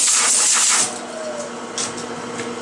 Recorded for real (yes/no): yes